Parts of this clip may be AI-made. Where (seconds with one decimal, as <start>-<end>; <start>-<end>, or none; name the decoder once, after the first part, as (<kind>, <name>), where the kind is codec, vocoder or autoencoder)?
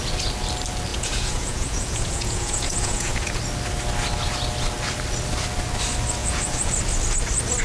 0.9-3.4 (vocoder, Vocos); 6.2-6.8